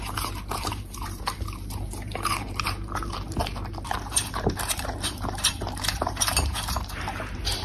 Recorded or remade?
remade